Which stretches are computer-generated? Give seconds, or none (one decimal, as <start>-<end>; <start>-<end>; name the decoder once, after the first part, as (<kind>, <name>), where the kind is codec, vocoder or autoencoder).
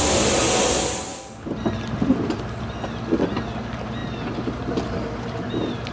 none